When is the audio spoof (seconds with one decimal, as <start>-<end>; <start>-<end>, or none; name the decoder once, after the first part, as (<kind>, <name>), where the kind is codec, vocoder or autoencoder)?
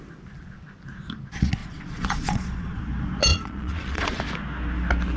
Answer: 1.6-2.8 (vocoder, Vocos); 3.3-4.2